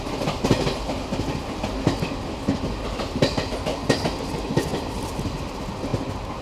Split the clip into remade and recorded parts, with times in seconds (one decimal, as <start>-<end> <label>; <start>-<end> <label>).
0.0-6.4 recorded